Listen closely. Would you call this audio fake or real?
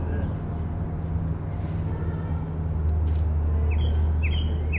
real